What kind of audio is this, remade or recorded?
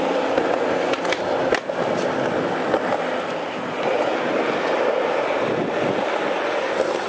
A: recorded